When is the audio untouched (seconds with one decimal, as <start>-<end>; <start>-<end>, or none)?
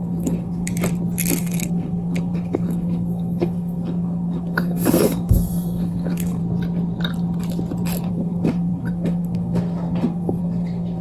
0.7-1.4; 6.4-8.1